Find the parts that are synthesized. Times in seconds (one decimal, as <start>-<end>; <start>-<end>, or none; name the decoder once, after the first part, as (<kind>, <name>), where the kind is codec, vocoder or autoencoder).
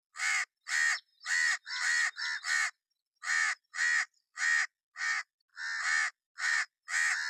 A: none